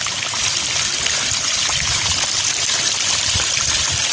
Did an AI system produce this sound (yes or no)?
no